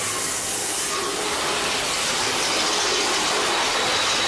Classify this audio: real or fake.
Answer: real